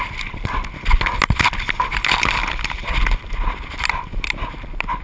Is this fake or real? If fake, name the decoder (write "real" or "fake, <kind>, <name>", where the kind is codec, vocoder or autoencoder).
real